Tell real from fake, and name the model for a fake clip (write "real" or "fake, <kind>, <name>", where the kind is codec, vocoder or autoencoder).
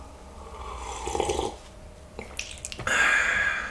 real